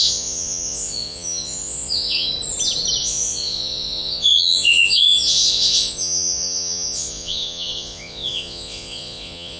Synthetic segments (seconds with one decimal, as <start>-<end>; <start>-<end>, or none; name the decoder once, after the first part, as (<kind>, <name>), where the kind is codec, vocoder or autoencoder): 0.0-2.3 (vocoder, Vocos); 3.0-9.6